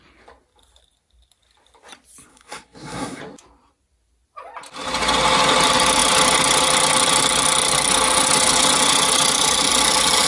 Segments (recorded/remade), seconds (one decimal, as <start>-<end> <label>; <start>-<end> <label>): 0.0-2.3 recorded; 2.3-3.2 remade; 3.2-10.3 recorded